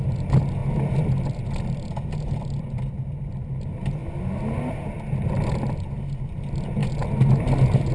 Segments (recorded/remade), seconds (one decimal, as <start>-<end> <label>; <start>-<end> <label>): 0.0-7.9 recorded